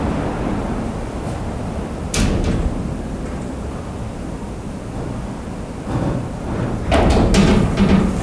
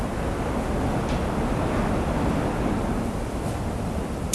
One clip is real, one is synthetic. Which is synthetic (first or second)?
second